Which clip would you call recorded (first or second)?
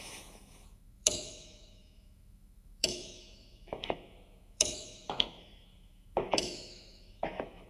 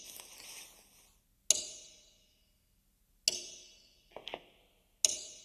second